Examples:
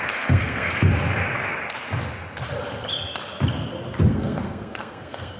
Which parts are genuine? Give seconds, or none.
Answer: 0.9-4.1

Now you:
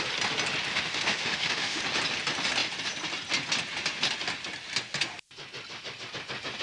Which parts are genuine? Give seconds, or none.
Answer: 0.0-0.7; 1.8-6.6

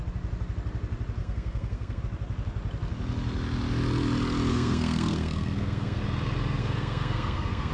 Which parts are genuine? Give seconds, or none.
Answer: 0.0-1.2; 2.0-4.5; 6.0-6.6

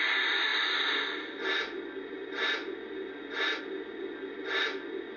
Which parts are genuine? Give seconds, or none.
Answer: 0.0-5.2

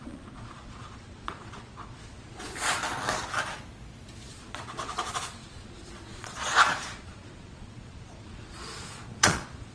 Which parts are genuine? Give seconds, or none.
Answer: 2.8-4.3

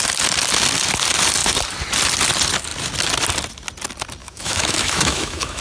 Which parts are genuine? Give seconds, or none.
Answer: 0.0-4.2